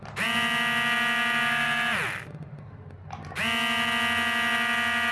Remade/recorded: recorded